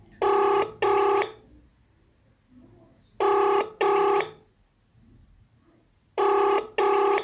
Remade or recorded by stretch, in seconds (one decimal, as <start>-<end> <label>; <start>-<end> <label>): 0.0-7.2 recorded